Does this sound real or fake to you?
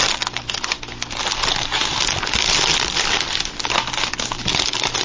real